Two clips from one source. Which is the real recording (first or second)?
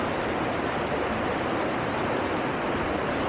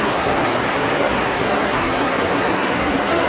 first